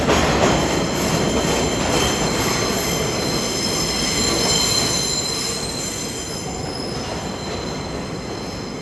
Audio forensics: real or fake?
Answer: real